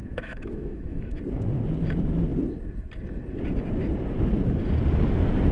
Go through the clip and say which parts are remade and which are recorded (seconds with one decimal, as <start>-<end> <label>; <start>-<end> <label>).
0.0-1.2 remade; 1.2-5.5 recorded